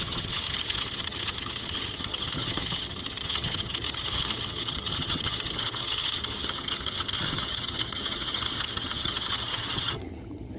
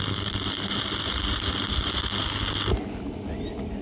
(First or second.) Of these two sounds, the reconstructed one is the first